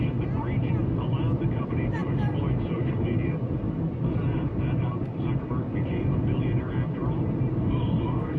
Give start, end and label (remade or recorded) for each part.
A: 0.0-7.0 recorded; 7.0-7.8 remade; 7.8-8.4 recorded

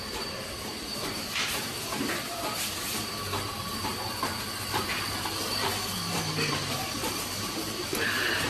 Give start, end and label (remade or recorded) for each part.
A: 0.0-3.9 remade; 3.9-6.5 recorded; 6.5-8.5 remade

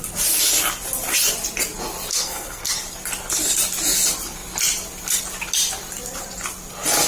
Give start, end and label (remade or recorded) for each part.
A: 0.0-2.1 recorded; 2.1-2.7 remade; 2.7-7.1 recorded